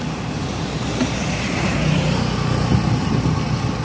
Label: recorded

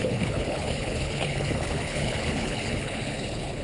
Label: remade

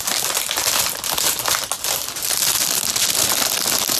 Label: recorded